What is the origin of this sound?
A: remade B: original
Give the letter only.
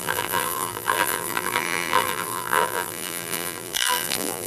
A